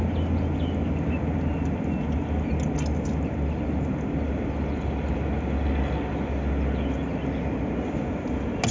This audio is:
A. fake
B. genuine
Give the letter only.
B